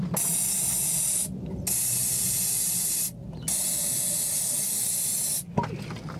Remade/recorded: recorded